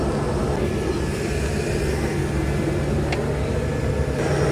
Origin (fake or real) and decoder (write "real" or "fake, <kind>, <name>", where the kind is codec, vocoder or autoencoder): real